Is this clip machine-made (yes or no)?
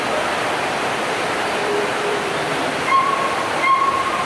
yes